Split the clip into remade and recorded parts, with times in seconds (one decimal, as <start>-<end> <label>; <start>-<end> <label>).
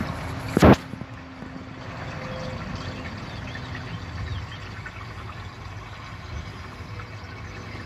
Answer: 0.0-7.9 recorded